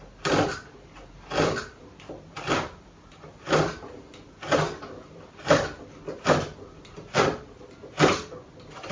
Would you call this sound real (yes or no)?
yes